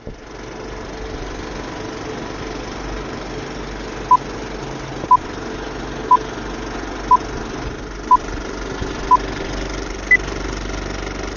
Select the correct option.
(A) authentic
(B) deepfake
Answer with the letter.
A